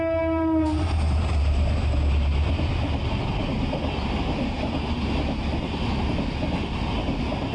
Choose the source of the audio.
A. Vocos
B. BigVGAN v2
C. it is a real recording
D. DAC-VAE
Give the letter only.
C